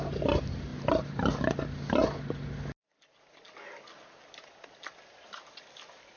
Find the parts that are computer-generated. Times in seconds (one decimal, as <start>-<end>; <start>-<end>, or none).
none